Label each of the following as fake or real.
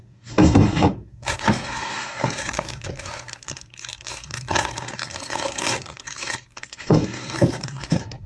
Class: fake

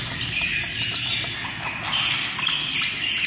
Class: real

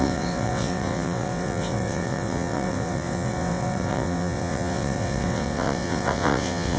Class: fake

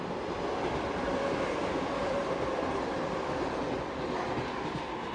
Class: real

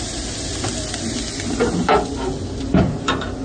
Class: fake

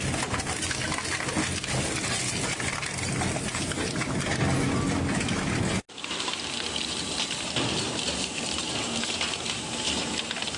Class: real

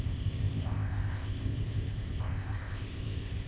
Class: fake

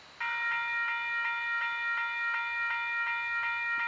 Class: real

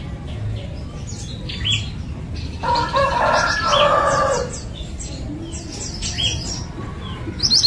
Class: real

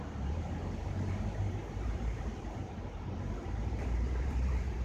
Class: fake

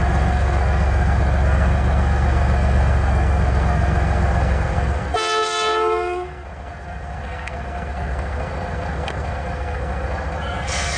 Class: fake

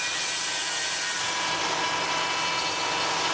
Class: real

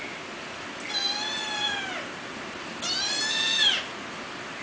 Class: real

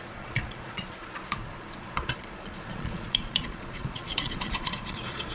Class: fake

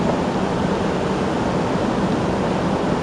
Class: real